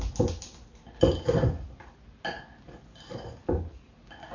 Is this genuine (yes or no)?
yes